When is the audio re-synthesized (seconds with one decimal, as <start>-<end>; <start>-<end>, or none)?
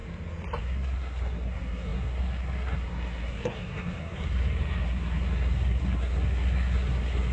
0.6-7.3